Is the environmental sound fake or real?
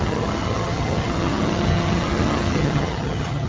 fake